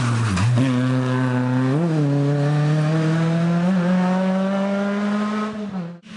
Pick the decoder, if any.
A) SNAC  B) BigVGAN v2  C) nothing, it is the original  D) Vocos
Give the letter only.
C